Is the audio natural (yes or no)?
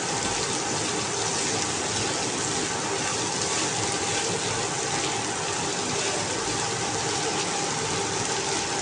yes